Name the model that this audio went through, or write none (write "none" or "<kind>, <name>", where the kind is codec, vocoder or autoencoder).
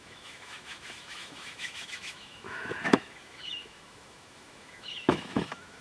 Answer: autoencoder, DAC-VAE